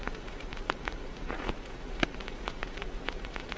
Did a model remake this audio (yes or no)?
yes